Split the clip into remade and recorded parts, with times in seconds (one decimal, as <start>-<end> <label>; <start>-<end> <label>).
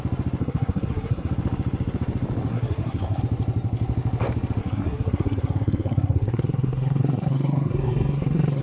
0.0-0.4 recorded; 0.4-1.3 remade; 1.3-2.5 recorded; 2.5-3.2 remade; 3.2-4.6 recorded; 4.6-8.6 remade